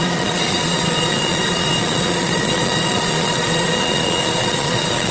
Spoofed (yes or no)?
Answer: yes